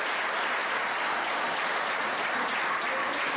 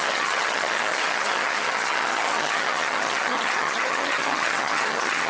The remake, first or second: second